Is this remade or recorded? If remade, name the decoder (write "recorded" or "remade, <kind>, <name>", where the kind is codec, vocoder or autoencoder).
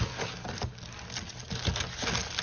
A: recorded